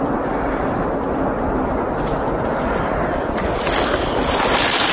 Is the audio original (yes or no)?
yes